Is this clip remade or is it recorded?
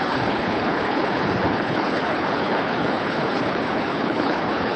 remade